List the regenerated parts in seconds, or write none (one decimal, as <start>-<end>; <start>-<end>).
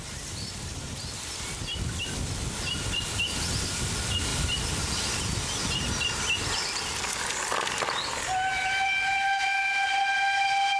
none